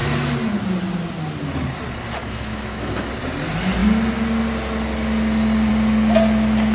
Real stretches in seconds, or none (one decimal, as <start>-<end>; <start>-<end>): 0.0-2.2; 3.1-6.7